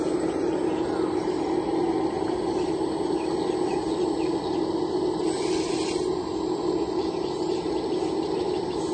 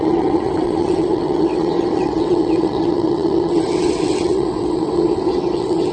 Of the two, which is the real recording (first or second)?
first